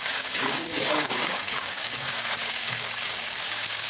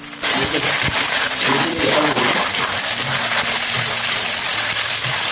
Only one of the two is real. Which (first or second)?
second